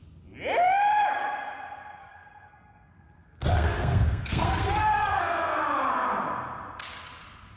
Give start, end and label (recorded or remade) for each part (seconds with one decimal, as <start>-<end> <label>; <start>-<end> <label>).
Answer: 0.0-2.0 recorded; 2.0-5.6 remade; 5.6-7.6 recorded